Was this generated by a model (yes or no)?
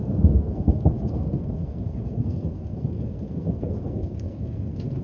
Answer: yes